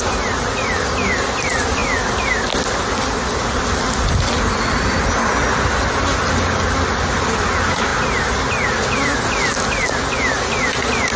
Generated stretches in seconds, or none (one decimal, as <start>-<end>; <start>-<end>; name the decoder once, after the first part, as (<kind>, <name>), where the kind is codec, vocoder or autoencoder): none